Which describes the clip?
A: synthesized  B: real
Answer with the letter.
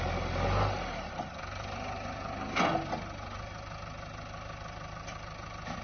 B